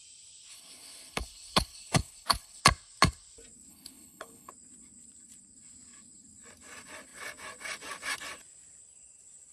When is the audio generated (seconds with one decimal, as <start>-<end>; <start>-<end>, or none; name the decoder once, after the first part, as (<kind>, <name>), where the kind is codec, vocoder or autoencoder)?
0.5-2.6 (codec, HILCodec); 3.7-4.5